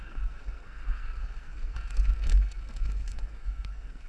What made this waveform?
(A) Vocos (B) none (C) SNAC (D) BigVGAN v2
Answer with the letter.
C